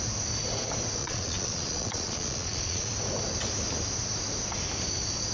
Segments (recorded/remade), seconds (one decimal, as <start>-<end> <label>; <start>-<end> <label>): 0.0-1.0 recorded; 1.0-2.9 remade; 2.9-5.3 recorded